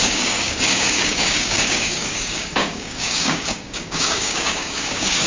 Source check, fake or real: fake